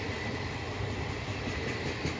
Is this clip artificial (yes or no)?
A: no